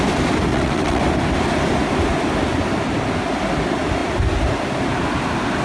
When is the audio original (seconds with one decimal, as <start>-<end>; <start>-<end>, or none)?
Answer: 0.0-0.5; 1.0-5.6